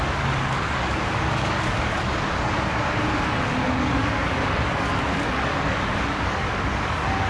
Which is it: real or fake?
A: fake